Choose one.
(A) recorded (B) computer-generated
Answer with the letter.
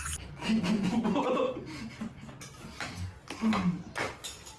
A